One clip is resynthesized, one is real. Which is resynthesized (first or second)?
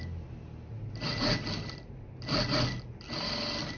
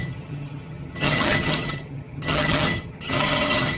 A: second